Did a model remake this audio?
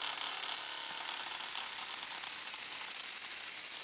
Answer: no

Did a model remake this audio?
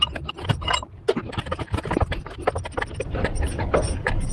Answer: no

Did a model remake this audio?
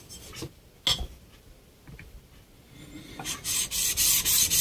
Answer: no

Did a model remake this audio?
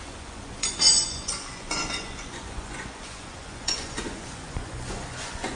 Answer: yes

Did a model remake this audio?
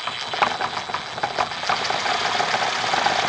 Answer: no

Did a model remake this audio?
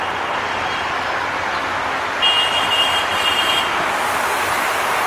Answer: no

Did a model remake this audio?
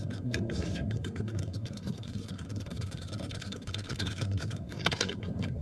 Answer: yes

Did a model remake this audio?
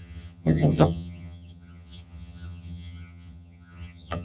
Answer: yes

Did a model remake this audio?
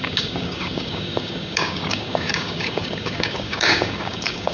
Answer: yes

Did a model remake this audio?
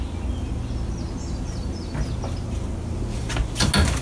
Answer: no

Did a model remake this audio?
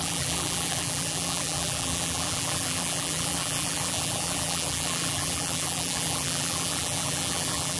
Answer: yes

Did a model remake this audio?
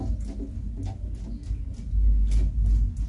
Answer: no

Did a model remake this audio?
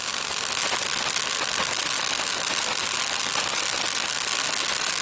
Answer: no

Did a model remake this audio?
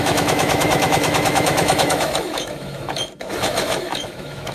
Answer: yes